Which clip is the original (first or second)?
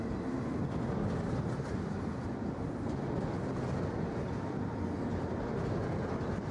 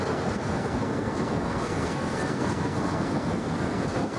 first